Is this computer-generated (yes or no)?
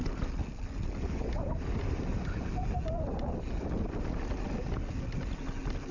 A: no